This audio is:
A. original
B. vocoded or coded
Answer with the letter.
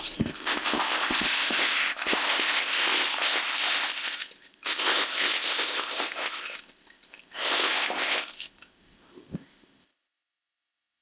B